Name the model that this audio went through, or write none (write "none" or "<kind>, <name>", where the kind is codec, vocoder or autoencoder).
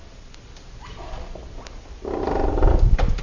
none